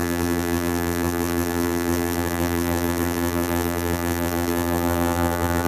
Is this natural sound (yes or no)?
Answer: no